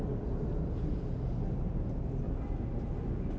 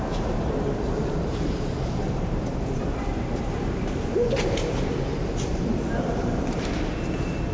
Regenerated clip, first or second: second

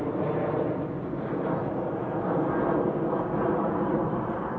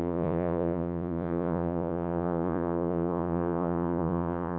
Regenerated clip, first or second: second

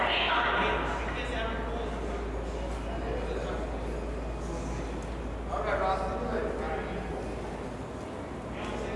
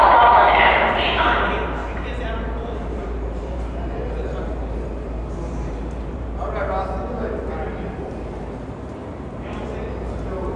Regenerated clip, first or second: second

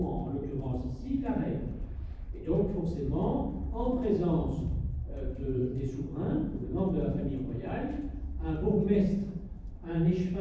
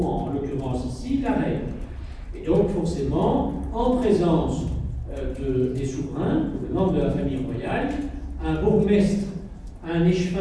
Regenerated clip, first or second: first